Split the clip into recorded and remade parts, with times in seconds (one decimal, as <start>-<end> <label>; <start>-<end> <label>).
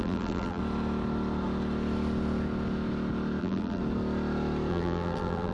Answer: 0.0-0.6 remade; 0.6-3.4 recorded; 3.4-3.8 remade; 3.8-4.7 recorded; 4.7-5.5 remade